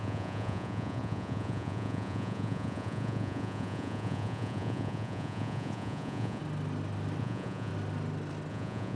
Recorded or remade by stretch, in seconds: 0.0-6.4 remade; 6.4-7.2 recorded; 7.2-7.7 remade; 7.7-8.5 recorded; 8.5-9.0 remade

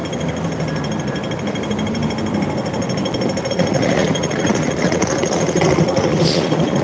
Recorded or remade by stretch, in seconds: 0.0-3.5 recorded; 3.5-6.8 remade

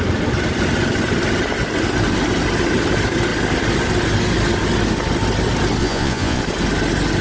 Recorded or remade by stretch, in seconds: 0.0-5.8 recorded; 5.8-6.4 remade; 6.4-7.2 recorded

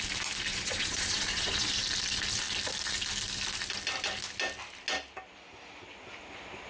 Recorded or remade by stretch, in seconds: 0.0-0.5 recorded; 0.5-1.7 remade; 1.7-6.7 recorded

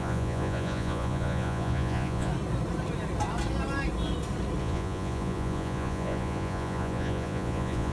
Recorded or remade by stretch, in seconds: 0.0-2.3 remade; 2.3-4.6 recorded; 4.6-7.9 remade

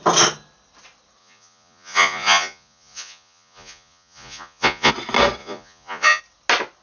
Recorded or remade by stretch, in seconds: 0.0-1.2 recorded; 1.2-4.9 remade; 4.9-5.4 recorded; 5.4-6.2 remade; 6.2-6.8 recorded